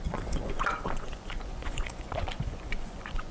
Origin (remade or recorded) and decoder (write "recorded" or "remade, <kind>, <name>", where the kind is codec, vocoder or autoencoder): remade, vocoder, Vocos